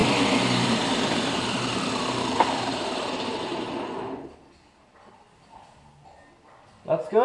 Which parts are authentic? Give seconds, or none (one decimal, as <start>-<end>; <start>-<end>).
3.7-7.2

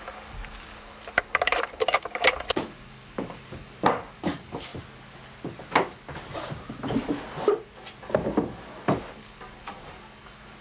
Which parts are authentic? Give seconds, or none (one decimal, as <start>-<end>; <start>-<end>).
4.7-9.1

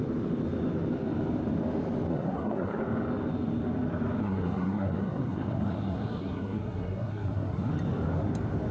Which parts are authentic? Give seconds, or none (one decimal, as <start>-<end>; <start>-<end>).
0.0-2.1; 2.8-4.2; 7.7-8.7

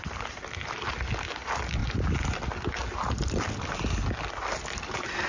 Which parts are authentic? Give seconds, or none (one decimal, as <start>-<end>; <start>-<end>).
0.0-5.3

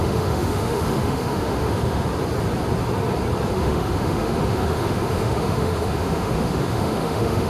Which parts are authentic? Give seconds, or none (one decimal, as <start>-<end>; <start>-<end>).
2.1-3.5